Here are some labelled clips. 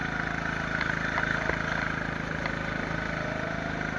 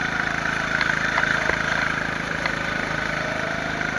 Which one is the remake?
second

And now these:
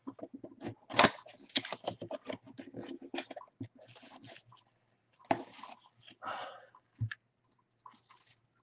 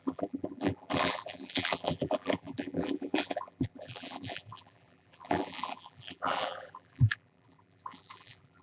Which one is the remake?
second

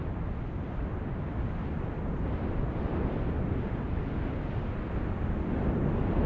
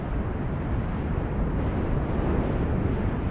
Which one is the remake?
first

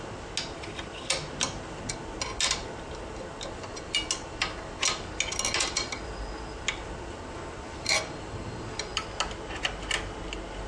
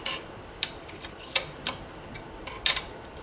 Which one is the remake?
second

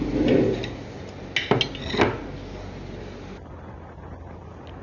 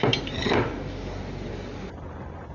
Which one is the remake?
second